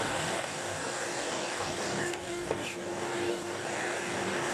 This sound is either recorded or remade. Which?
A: remade